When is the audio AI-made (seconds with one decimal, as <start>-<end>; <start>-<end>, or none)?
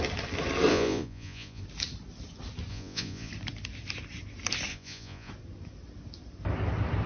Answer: 0.7-1.6; 2.7-3.3; 4.7-5.3